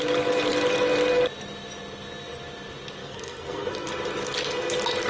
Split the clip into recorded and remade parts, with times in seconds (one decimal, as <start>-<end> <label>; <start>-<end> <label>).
0.0-3.0 recorded; 3.0-3.9 remade; 3.9-5.1 recorded